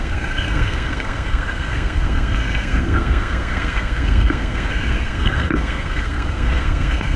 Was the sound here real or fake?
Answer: fake